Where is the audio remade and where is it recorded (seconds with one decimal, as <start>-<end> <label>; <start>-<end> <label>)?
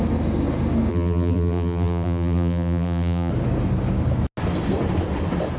0.0-0.9 recorded; 0.9-3.3 remade; 3.3-5.6 recorded